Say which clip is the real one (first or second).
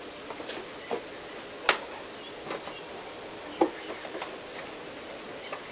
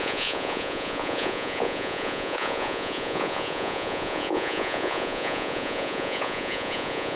first